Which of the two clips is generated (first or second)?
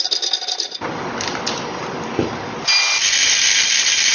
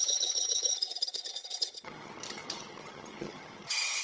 second